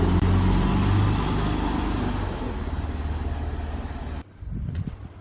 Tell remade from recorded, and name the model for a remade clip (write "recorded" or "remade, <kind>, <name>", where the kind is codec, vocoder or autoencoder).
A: recorded